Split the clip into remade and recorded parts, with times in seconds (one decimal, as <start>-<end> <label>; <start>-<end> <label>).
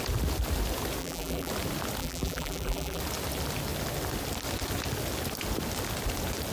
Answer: 0.0-1.0 recorded; 1.0-1.5 remade; 1.5-2.0 recorded; 2.0-3.0 remade; 3.0-6.5 recorded